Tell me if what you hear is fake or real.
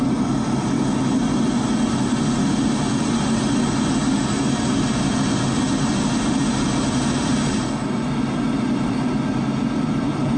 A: real